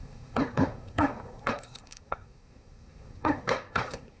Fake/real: fake